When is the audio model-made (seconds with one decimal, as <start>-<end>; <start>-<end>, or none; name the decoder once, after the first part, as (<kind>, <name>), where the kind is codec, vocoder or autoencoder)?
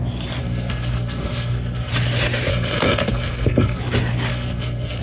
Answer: 0.4-1.9 (codec, SNAC); 2.5-3.8; 4.3-5.0